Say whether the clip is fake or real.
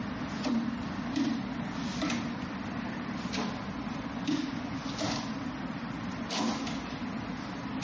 real